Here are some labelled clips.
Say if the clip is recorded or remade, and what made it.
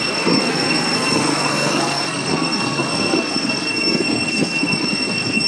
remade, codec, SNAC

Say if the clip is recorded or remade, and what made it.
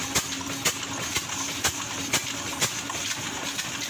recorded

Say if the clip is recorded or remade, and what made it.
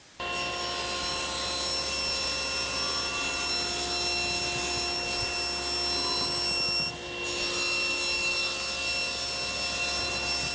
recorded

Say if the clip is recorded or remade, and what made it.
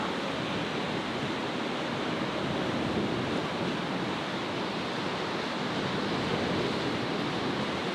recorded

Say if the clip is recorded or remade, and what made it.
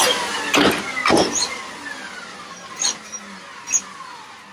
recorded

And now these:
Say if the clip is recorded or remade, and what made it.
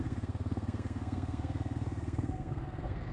remade, codec, SNAC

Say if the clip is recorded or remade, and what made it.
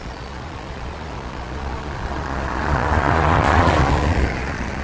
remade, vocoder, Vocos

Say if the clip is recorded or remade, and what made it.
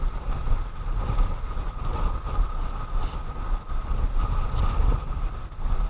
recorded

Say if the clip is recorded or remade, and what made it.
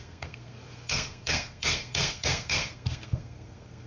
remade, codec, SNAC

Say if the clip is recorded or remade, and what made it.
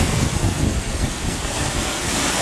remade, codec, SNAC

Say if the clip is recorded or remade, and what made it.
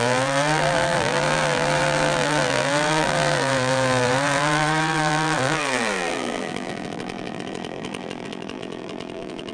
remade, vocoder, BigVGAN v2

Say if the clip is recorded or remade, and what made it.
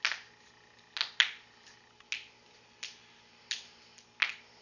recorded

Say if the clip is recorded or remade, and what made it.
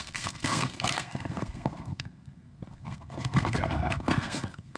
remade, codec, SNAC